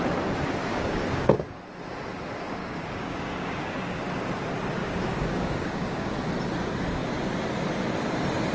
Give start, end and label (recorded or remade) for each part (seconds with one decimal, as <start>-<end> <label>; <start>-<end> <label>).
0.0-0.7 recorded; 0.7-1.6 remade; 1.6-2.6 recorded; 2.6-4.0 remade; 4.0-4.8 recorded; 4.8-6.2 remade; 6.2-8.5 recorded